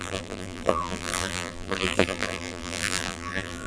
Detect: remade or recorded remade